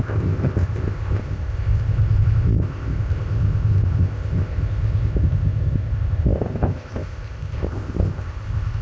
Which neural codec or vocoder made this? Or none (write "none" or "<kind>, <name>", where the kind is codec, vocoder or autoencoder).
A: codec, ZipCodec